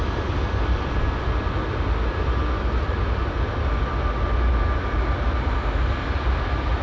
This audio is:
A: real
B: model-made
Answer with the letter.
A